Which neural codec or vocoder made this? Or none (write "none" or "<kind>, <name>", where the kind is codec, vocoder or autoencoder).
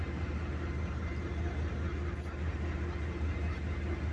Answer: none